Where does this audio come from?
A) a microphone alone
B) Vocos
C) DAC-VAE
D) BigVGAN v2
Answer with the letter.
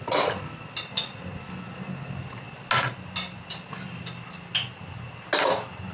A